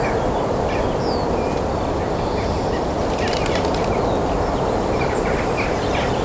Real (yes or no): yes